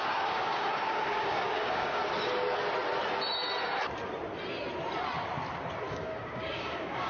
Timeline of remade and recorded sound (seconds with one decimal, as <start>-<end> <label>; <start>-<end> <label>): 0.0-2.0 remade; 2.0-5.9 recorded; 5.9-7.1 remade